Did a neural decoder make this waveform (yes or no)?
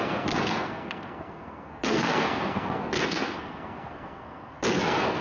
yes